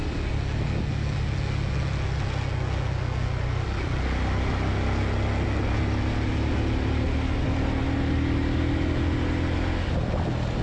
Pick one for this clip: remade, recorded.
recorded